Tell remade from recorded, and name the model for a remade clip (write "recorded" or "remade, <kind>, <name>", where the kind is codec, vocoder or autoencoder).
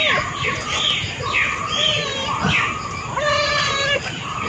recorded